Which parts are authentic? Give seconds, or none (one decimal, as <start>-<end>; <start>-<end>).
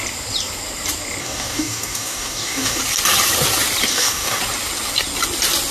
0.0-1.2; 2.8-3.9; 4.4-5.7